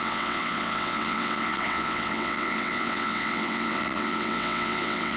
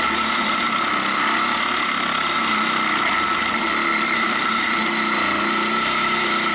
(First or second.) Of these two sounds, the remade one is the first